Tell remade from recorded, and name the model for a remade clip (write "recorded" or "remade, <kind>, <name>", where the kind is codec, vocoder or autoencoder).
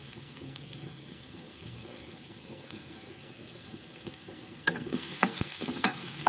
remade, codec, SNAC